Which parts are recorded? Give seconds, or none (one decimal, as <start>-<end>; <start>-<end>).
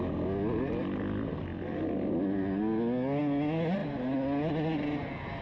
0.0-5.4